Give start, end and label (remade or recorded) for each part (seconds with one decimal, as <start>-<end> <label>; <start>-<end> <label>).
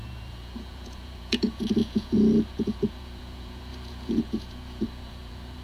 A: 0.0-5.6 remade